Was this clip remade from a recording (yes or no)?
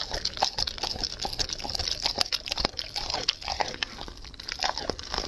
no